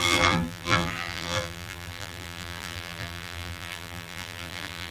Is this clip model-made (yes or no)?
yes